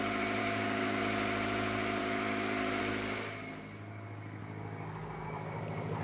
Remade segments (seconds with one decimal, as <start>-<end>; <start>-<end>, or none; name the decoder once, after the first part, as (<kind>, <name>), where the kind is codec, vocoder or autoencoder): 0.4-1.0 (codec, DAC); 2.0-2.8; 4.4-5.6

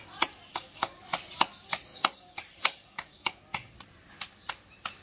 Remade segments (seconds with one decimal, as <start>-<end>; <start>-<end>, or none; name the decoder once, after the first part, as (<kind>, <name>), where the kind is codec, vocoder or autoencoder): 0.5-1.0 (codec, DAC); 1.9-3.4

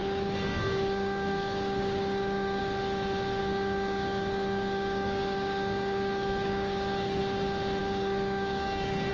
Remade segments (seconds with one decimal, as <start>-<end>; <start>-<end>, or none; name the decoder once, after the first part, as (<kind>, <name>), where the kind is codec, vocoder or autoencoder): 0.0-2.6 (codec, DAC); 3.4-7.2; 7.8-9.1

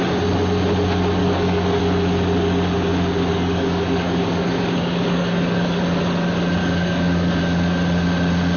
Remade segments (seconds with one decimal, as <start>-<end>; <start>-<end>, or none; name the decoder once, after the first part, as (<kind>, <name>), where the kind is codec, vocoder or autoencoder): 1.2-1.8 (codec, DAC); 3.3-5.8; 6.6-7.4

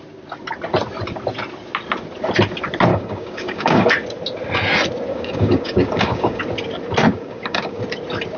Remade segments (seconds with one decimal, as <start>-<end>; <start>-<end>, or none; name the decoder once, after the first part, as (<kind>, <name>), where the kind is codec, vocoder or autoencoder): 2.9-3.9 (codec, DAC); 5.1-6.4; 7.1-7.8

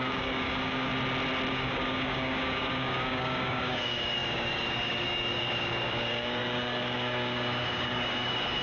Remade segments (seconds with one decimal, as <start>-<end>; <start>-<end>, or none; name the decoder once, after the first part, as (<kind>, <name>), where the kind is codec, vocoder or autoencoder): 0.0-0.9 (codec, DAC); 1.5-8.6